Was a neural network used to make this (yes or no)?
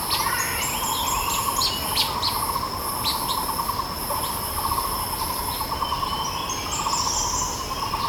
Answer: yes